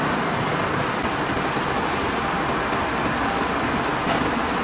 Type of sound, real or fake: real